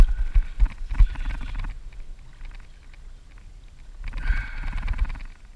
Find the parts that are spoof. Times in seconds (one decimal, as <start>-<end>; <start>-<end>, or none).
none